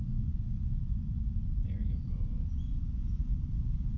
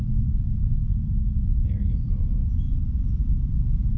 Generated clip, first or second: first